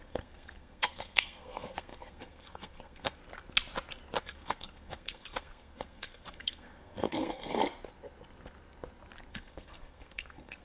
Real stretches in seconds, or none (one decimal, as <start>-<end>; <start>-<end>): 3.2-4.2; 7.6-9.3